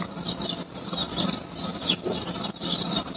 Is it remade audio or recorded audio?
recorded